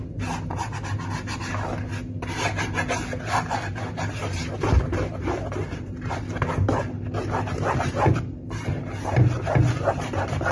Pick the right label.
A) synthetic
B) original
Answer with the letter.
B